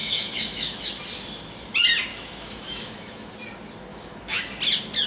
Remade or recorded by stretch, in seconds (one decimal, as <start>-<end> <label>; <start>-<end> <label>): 0.0-0.9 remade; 0.9-2.1 recorded; 2.1-3.3 remade; 3.3-3.9 recorded; 3.9-4.4 remade; 4.4-5.1 recorded

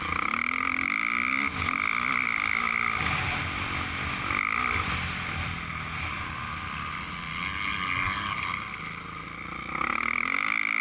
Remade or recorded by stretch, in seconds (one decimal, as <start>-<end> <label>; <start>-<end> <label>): 0.0-10.8 recorded

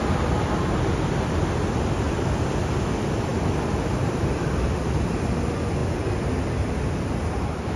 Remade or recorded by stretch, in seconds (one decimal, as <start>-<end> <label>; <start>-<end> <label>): 0.0-7.8 recorded

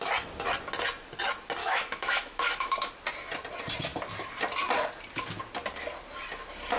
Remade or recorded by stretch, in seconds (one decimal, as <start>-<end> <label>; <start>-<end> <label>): 0.0-1.6 recorded; 1.6-2.9 remade; 2.9-6.8 recorded

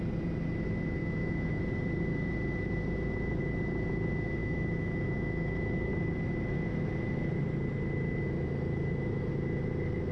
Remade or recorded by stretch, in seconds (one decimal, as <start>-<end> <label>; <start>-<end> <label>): 0.0-1.0 recorded; 1.0-1.6 remade; 1.6-4.4 recorded; 4.4-5.9 remade; 5.9-10.1 recorded